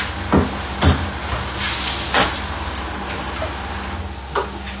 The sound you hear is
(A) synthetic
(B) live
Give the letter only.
B